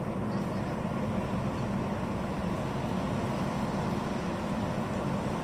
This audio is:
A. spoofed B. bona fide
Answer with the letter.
B